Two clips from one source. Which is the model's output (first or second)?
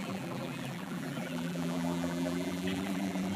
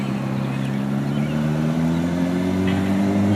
first